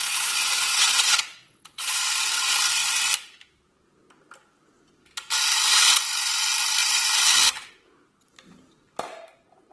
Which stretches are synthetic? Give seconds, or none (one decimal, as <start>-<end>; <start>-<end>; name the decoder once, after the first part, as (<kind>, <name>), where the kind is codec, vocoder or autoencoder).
0.0-2.0 (vocoder, WaveNeXt)